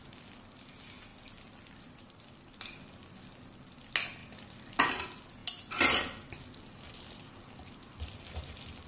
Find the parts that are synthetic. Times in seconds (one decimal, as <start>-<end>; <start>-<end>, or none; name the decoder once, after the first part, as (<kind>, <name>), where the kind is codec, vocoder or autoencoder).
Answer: none